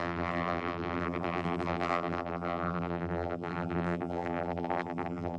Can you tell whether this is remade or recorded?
remade